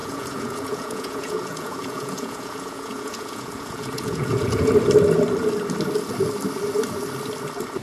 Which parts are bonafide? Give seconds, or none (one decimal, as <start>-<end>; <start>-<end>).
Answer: 4.7-7.8